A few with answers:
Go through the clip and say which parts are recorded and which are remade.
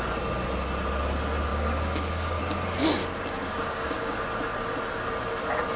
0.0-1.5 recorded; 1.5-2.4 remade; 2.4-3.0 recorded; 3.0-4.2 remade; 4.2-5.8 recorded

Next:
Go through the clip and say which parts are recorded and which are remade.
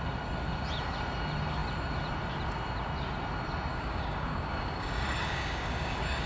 0.0-3.7 recorded; 3.7-6.3 remade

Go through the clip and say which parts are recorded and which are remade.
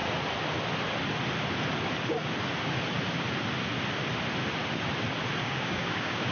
0.0-5.4 recorded; 5.4-6.3 remade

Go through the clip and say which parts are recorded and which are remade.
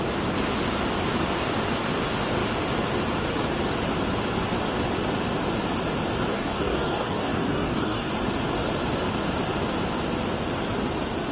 0.0-6.3 recorded; 6.3-8.1 remade; 8.1-11.3 recorded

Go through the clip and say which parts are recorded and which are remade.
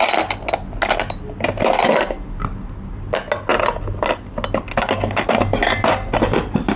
0.0-6.8 recorded